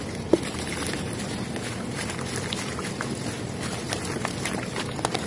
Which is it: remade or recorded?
recorded